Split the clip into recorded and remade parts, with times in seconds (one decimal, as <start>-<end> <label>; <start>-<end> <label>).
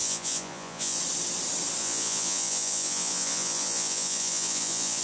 0.0-1.0 remade; 1.0-1.8 recorded; 1.8-5.0 remade